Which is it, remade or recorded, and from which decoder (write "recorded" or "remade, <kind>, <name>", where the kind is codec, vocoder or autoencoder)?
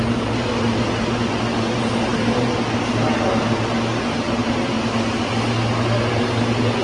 recorded